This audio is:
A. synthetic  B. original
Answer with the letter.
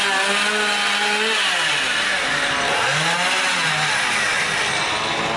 B